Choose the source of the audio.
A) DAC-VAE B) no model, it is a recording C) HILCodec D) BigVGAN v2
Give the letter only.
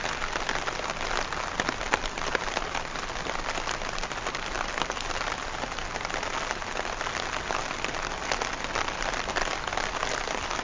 B